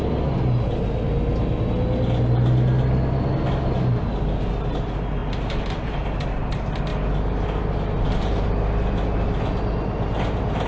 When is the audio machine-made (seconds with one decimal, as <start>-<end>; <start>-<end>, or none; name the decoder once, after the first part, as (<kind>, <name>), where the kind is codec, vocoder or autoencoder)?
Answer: none